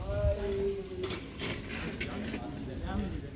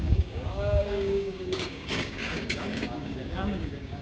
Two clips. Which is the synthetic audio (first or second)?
second